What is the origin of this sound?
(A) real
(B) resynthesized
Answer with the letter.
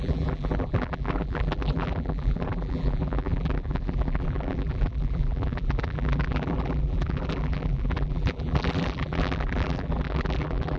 B